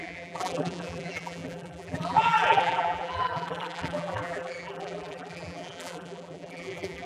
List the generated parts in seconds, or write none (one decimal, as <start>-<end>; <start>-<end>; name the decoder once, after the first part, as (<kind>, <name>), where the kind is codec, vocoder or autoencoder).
0.0-7.1 (vocoder, BigVGAN v2)